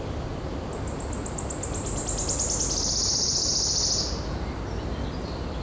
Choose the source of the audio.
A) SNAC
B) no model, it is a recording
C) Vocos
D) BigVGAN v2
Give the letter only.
B